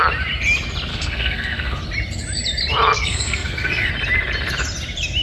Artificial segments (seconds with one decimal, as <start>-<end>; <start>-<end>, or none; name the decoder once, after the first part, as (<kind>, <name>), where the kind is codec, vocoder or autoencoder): 0.9-1.8 (codec, SNAC); 3.0-3.9